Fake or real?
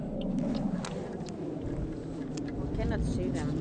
real